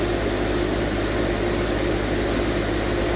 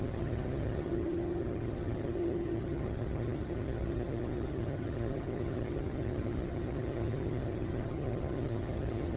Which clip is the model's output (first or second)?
second